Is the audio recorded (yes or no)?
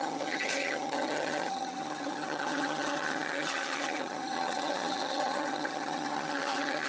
no